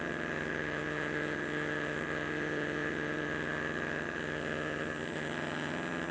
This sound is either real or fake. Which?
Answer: fake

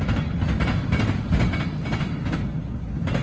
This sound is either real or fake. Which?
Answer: real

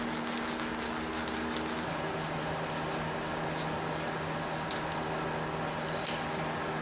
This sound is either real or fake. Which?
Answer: real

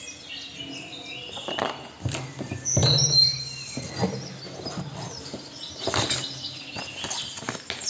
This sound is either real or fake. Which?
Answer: real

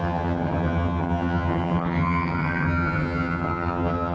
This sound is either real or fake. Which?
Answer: fake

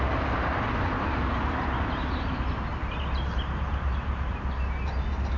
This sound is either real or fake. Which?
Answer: real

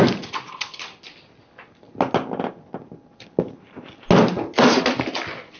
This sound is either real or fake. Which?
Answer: real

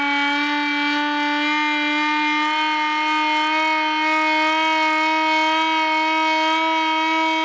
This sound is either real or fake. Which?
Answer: real